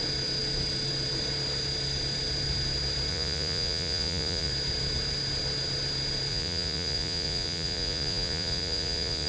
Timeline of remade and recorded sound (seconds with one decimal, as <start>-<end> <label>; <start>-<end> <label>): 0.0-3.1 recorded; 3.1-4.5 remade; 4.5-6.3 recorded; 6.3-9.3 remade